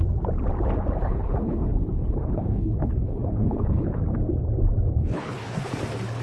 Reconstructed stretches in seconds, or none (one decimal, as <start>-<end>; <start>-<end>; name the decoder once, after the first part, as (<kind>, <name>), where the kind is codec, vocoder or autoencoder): 1.0-4.0 (codec, HILCodec); 5.0-5.7